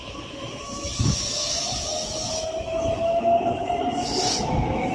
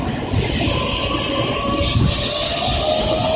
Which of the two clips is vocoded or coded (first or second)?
first